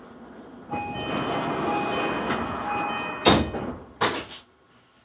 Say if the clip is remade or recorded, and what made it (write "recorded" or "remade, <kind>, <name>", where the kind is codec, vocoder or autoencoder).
recorded